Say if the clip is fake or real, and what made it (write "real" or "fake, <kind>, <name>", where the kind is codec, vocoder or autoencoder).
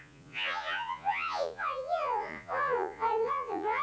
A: fake, vocoder, Vocos